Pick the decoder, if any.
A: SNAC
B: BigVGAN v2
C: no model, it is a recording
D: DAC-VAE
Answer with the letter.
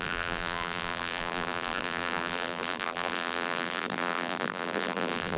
B